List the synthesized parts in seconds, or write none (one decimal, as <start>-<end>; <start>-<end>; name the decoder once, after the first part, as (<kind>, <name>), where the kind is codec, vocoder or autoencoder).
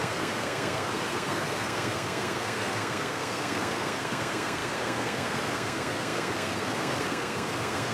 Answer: 0.0-7.9 (codec, SNAC)